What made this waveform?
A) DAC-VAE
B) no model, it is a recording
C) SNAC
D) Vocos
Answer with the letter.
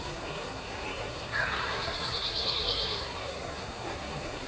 C